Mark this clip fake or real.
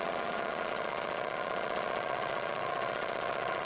fake